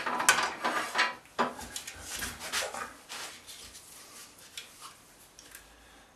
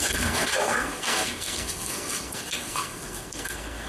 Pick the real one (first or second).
first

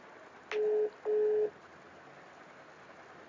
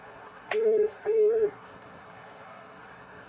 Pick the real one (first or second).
first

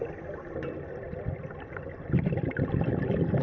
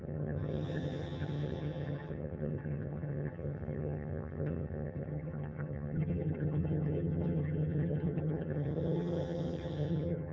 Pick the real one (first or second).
first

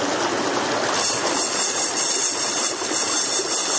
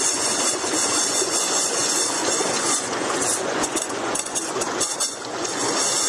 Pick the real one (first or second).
first